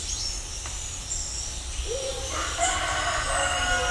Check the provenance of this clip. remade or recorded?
recorded